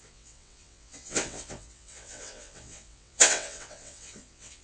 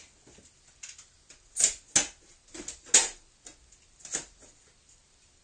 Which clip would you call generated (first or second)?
first